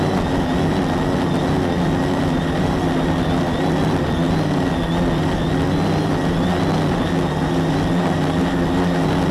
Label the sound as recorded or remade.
recorded